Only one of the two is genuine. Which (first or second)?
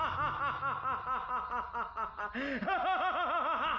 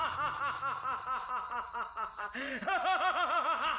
first